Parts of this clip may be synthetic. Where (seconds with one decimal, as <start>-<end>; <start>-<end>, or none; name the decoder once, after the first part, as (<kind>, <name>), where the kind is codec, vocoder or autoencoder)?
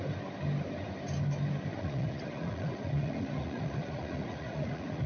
1.7-5.1 (vocoder, Vocos)